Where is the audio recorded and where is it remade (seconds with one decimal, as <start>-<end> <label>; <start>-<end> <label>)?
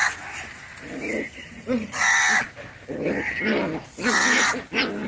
0.0-1.5 recorded; 1.5-2.1 remade; 2.1-5.1 recorded